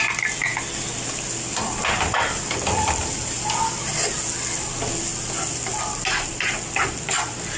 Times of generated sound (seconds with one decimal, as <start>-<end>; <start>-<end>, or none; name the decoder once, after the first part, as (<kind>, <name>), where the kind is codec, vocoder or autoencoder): none